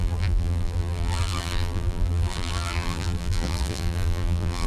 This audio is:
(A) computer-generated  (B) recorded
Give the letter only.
A